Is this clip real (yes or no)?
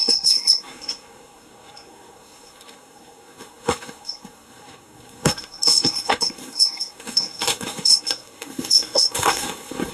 no